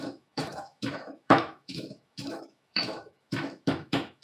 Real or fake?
fake